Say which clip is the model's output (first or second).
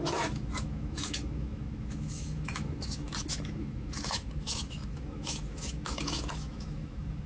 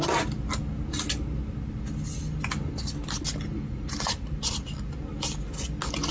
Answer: first